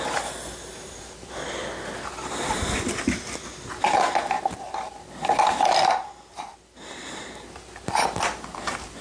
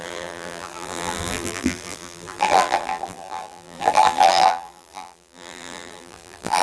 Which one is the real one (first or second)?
first